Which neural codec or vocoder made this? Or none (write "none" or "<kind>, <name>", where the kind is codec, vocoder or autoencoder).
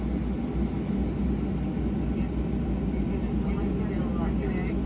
none